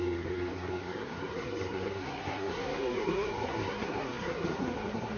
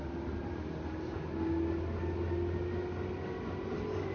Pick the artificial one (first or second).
first